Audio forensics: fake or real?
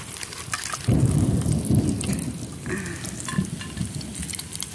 real